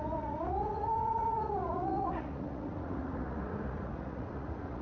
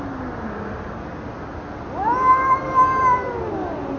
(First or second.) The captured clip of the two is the second